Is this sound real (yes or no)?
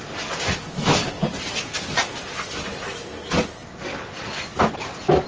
yes